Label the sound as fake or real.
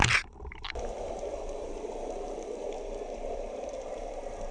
fake